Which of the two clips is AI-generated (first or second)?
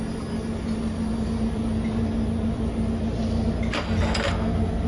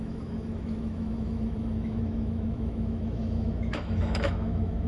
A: second